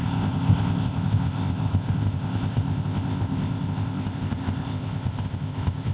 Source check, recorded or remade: remade